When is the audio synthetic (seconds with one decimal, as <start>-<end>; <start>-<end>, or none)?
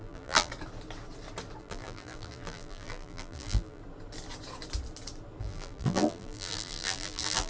0.0-0.5; 1.6-3.8; 5.4-7.5